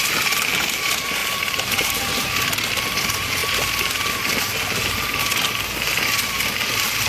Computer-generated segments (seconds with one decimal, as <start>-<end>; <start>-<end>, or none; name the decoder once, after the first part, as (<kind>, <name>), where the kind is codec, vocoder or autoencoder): none